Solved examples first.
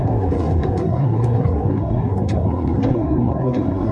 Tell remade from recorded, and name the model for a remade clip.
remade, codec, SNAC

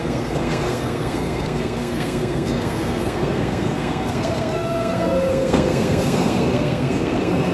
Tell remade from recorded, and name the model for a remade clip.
remade, codec, SNAC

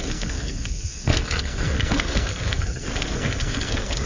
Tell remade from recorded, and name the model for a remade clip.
remade, codec, SNAC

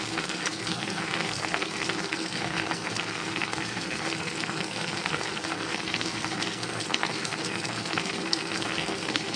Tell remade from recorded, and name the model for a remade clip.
remade, codec, SNAC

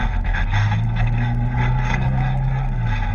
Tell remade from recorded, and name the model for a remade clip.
remade, codec, SNAC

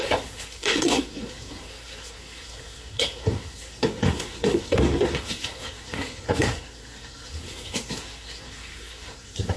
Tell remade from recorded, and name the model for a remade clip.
remade, codec, SNAC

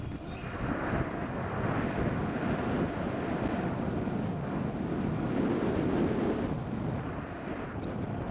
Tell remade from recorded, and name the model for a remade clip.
recorded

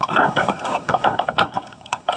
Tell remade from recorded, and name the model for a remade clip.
remade, codec, SNAC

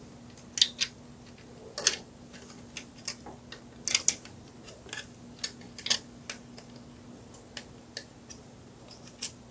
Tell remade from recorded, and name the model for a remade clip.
recorded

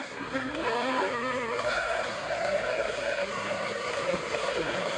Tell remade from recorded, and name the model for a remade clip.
remade, codec, SNAC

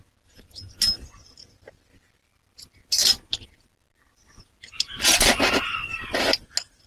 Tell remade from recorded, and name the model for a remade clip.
recorded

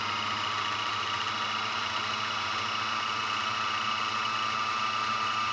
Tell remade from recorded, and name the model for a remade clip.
recorded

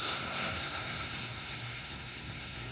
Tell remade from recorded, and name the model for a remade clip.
remade, codec, SNAC